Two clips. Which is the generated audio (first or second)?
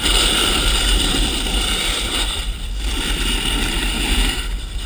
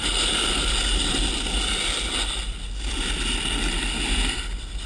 first